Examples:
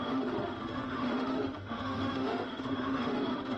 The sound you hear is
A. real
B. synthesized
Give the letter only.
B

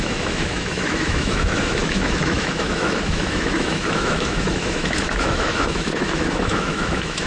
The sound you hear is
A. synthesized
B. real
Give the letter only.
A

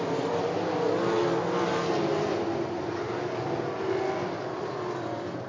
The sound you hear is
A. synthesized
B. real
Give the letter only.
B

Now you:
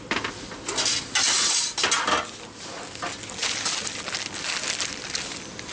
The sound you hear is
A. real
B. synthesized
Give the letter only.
A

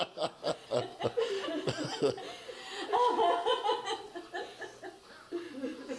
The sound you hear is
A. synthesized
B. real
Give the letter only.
B